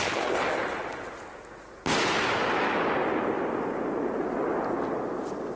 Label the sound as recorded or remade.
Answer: recorded